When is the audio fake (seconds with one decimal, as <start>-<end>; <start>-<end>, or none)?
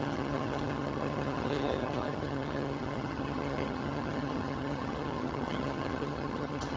0.0-6.8